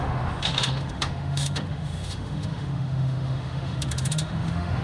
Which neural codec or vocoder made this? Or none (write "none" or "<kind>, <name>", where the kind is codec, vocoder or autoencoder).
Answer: autoencoder, DAC-VAE